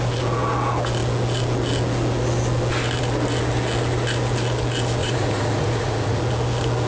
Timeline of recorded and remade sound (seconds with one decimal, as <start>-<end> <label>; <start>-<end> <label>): 0.0-5.0 recorded; 5.0-6.2 remade; 6.2-6.9 recorded